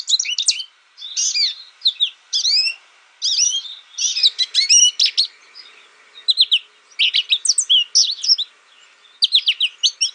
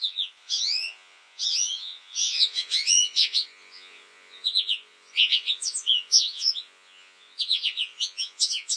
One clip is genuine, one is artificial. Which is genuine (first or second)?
first